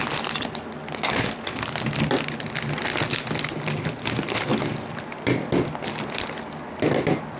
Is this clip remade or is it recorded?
recorded